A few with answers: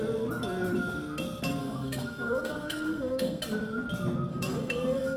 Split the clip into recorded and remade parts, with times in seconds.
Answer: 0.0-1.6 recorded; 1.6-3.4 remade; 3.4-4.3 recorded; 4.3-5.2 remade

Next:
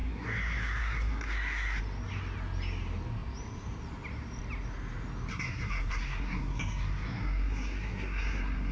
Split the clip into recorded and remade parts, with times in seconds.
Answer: 0.0-1.8 remade; 1.8-5.3 recorded; 5.3-8.7 remade

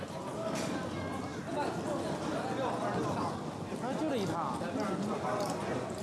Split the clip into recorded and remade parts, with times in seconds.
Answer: 0.0-6.0 recorded

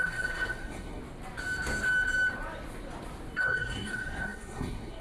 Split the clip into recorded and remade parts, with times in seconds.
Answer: 0.0-1.0 remade; 1.0-3.4 recorded; 3.4-5.0 remade

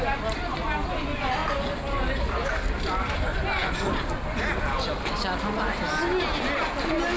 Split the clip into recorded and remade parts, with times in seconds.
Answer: 0.0-7.2 recorded

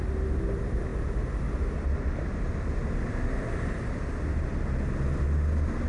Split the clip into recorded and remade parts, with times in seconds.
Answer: 0.0-5.9 recorded